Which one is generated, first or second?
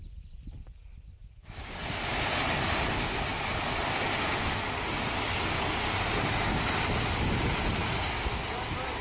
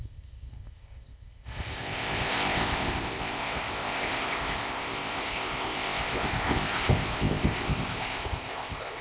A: second